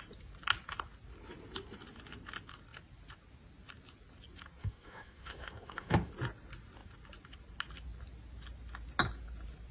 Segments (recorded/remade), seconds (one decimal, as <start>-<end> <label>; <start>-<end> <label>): 0.0-4.6 recorded; 4.6-6.1 remade; 6.1-9.7 recorded